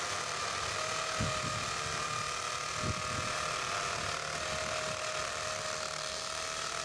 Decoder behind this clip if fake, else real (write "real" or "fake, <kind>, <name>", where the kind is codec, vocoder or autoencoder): real